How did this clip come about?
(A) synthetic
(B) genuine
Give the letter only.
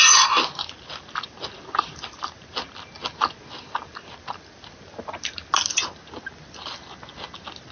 B